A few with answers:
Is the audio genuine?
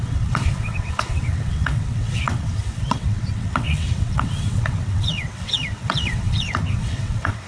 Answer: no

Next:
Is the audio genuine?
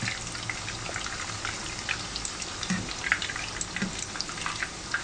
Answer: yes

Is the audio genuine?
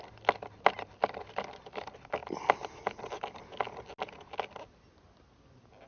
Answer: yes